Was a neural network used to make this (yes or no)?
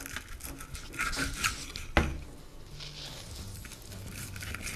no